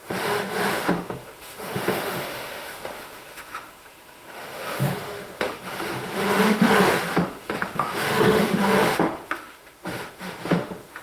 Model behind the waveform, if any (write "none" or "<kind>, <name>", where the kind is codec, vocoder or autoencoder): autoencoder, DAC-VAE